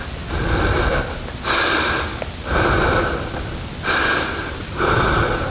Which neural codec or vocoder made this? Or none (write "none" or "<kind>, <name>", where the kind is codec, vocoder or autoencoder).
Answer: none